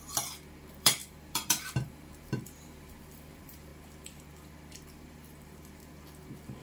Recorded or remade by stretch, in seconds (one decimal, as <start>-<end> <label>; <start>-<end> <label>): 0.0-6.6 remade